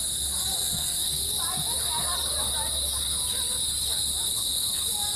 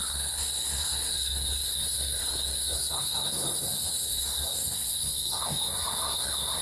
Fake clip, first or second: second